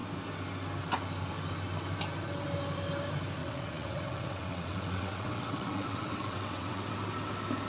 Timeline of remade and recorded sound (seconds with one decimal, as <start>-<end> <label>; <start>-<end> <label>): 0.0-3.4 recorded; 3.4-6.9 remade; 6.9-7.7 recorded